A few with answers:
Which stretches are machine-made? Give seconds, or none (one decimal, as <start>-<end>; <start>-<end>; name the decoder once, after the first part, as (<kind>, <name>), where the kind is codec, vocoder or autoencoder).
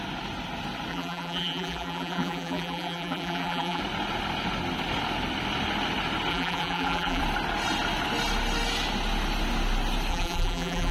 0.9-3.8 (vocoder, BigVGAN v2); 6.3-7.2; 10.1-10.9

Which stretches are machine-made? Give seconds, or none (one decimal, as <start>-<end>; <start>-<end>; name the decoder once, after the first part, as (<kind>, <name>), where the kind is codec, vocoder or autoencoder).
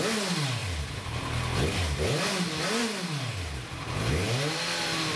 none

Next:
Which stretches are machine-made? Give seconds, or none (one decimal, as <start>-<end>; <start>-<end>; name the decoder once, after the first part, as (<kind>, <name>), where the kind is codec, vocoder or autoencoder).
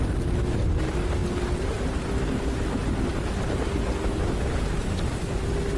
none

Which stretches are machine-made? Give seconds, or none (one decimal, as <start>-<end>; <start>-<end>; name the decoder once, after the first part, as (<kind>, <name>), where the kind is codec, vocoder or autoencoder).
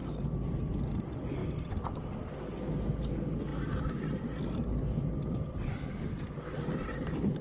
0.0-0.6 (vocoder, BigVGAN v2); 3.5-5.9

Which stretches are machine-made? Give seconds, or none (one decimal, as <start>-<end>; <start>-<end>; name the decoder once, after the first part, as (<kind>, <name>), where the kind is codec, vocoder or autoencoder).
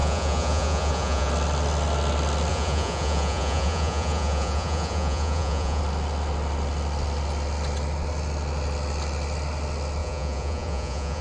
0.0-1.3 (vocoder, Vocos); 2.5-5.8; 10.0-11.2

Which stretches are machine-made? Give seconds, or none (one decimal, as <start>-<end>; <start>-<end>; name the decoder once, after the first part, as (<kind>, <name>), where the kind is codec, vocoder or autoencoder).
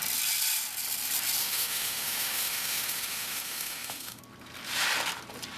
1.4-4.2 (autoencoder, DAC-VAE)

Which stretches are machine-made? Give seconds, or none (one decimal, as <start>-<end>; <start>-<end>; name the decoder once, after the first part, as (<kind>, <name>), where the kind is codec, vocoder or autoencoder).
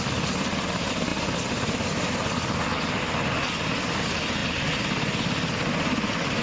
none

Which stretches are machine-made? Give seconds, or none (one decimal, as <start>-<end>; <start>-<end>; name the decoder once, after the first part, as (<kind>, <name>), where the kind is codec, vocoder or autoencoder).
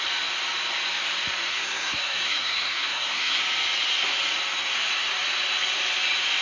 1.5-3.4 (codec, SNAC)